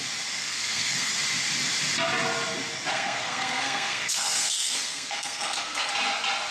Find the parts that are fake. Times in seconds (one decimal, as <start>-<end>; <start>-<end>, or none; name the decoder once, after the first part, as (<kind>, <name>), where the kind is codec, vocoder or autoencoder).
0.4-1.1 (codec, SNAC); 2.9-5.9